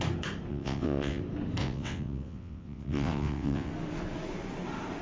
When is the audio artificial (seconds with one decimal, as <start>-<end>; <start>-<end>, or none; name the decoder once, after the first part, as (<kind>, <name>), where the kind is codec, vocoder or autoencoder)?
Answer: 0.5-1.2 (vocoder, WaveNeXt); 1.6-3.7